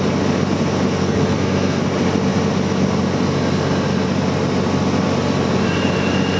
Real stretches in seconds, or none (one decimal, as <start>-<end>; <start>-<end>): 0.0-1.0; 1.8-6.4